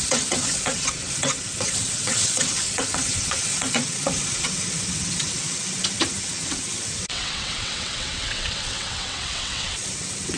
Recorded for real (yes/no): no